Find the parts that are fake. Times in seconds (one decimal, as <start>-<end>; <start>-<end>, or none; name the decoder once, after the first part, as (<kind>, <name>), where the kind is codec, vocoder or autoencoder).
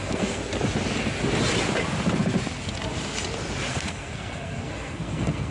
0.0-0.4 (codec, SNAC); 3.7-5.5